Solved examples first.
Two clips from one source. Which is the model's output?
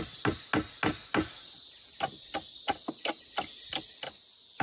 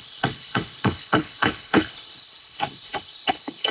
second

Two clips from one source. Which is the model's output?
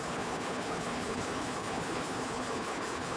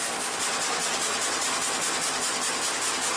first